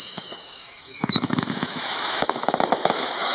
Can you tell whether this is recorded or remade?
remade